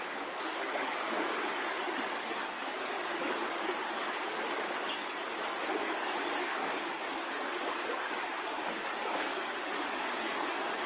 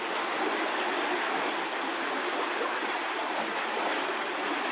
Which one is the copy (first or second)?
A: first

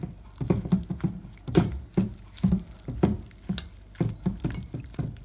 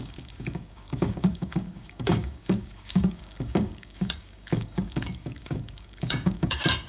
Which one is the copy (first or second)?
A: second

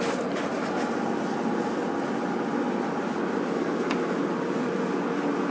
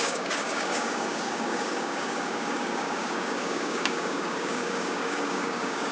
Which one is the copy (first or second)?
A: second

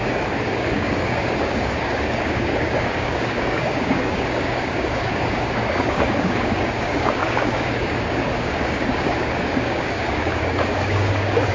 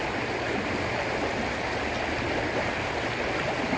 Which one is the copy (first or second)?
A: first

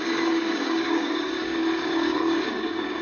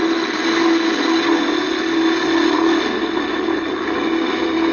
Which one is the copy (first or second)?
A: first